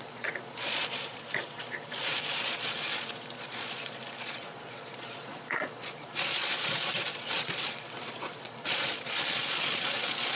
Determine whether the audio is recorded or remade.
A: remade